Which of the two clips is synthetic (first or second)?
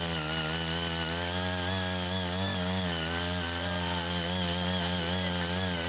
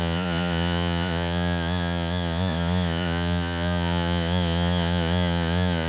second